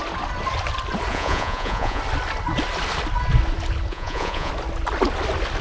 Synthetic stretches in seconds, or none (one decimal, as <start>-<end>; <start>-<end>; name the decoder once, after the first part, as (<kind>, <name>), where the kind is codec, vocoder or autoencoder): 1.1-2.0 (vocoder, Vocos); 3.9-4.5